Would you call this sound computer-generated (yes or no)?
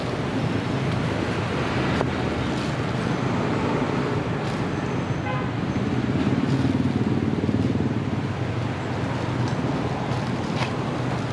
no